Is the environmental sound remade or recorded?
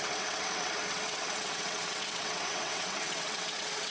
remade